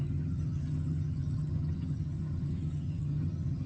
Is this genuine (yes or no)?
no